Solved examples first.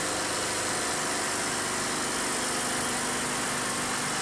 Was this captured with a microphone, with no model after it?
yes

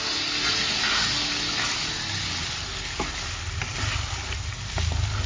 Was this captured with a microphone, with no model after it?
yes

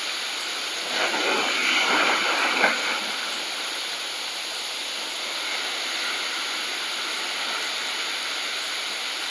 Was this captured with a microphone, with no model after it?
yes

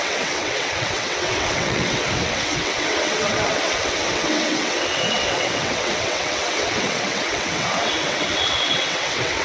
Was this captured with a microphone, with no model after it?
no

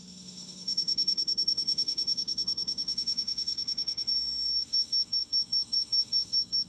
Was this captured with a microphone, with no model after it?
no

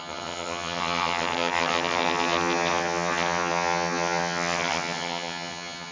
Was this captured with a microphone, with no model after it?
no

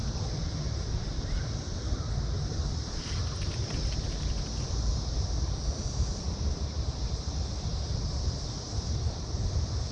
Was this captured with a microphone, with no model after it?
yes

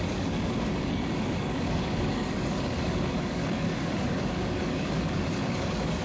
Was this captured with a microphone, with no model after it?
no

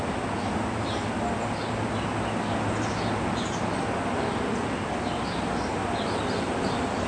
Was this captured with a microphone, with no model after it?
yes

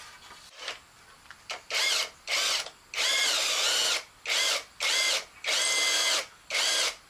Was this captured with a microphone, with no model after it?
yes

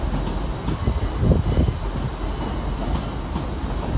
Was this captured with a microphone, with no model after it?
yes